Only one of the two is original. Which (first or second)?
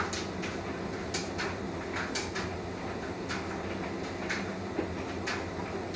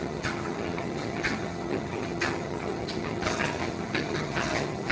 first